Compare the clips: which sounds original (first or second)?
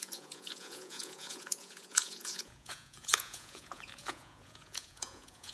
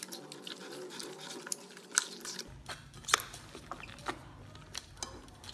second